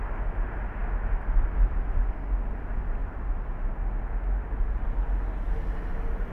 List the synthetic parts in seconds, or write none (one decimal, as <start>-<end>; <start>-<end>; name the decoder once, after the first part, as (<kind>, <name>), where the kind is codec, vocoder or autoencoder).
3.0-3.9 (vocoder, BigVGAN v2)